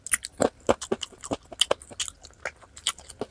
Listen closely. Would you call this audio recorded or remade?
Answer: recorded